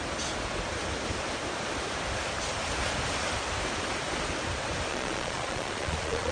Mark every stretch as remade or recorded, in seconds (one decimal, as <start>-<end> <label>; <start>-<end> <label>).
0.0-4.9 recorded; 4.9-6.3 remade